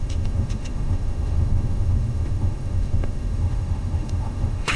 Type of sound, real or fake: fake